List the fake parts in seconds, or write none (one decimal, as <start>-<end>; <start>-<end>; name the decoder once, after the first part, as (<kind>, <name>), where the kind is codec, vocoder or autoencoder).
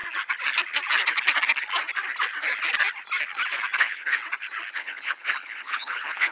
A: 3.8-4.2 (codec, HILCodec); 4.7-6.3